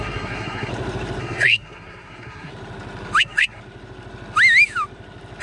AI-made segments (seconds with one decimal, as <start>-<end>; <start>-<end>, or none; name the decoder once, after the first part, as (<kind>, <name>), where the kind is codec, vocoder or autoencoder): 0.0-0.7 (codec, SNAC); 1.2-2.5; 3.2-3.6